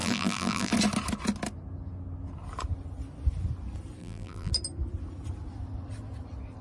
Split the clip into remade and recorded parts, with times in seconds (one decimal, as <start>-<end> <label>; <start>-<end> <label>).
0.0-0.7 remade; 0.7-4.0 recorded; 4.0-4.5 remade; 4.5-6.6 recorded